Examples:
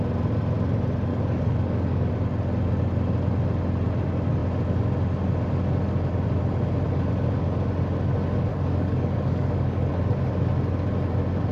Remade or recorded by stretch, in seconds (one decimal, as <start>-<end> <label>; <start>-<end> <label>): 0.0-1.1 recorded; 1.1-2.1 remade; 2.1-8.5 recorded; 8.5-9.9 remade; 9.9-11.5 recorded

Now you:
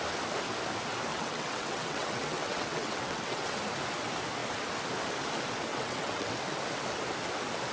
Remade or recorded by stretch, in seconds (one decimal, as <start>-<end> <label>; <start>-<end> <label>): 0.0-1.1 recorded; 1.1-3.6 remade; 3.6-5.7 recorded; 5.7-6.4 remade; 6.4-7.7 recorded

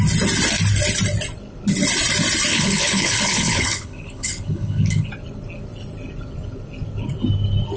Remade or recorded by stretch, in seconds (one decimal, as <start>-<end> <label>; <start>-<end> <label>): 0.0-2.5 recorded; 2.5-5.1 remade; 5.1-7.8 recorded